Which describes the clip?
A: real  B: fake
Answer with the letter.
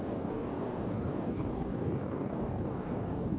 B